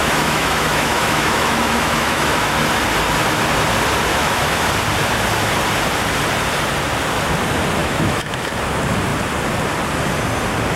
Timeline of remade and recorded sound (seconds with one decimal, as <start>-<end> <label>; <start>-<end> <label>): 0.0-2.5 remade; 2.5-4.1 recorded; 4.1-4.7 remade; 4.7-7.8 recorded; 7.8-8.5 remade; 8.5-10.8 recorded